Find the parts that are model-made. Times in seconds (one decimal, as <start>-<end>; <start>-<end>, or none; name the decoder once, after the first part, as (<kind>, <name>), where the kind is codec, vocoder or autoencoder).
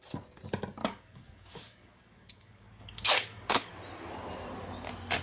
0.8-3.7 (codec, DAC)